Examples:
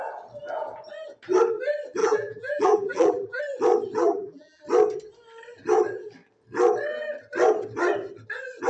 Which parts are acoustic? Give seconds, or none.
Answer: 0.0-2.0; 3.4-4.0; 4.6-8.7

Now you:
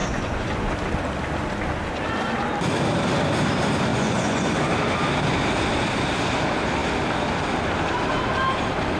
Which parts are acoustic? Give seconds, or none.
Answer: 0.7-3.9; 4.5-9.0

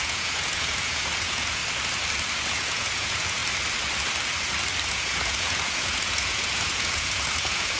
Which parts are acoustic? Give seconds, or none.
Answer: 1.6-2.5; 3.4-4.9

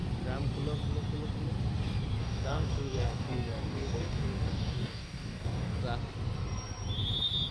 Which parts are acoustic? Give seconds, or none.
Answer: 0.0-2.2; 5.8-7.5

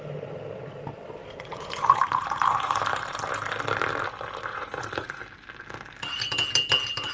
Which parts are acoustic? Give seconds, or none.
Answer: 0.0-1.2; 2.8-4.5; 5.2-7.1